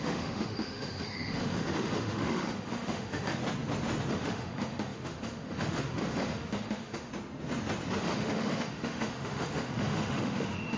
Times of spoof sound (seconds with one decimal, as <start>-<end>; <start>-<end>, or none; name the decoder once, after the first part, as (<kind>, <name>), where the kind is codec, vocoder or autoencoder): 0.0-3.4 (autoencoder, DAC-VAE); 4.1-7.1; 8.0-10.8

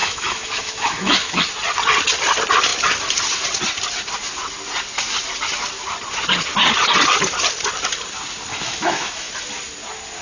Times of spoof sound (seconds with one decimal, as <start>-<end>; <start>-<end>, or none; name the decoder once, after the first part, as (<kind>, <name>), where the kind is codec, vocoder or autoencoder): 0.0-1.4 (autoencoder, DAC-VAE); 8.5-9.3

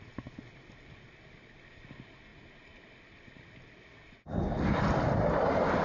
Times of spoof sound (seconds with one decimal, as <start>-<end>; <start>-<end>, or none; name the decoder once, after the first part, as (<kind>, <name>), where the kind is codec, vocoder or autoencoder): none

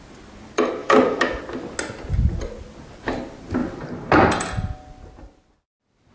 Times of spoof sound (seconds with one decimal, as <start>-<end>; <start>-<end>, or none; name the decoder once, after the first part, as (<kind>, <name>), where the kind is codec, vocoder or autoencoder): 0.8-1.4 (autoencoder, DAC-VAE)